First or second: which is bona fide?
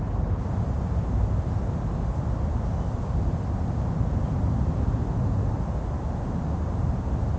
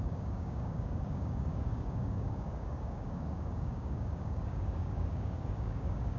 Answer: first